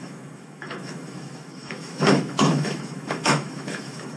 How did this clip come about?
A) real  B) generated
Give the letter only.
B